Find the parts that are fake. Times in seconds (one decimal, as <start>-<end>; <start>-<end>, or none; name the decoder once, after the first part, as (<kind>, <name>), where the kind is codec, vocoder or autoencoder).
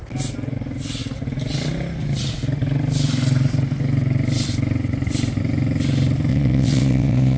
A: 6.3-7.4 (vocoder, WaveNeXt)